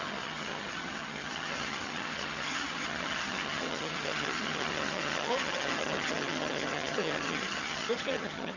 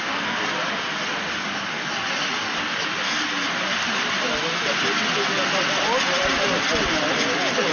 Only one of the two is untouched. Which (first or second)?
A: second